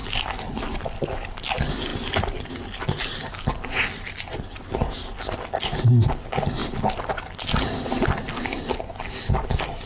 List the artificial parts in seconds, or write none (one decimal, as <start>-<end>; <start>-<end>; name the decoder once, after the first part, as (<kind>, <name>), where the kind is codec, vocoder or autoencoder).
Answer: none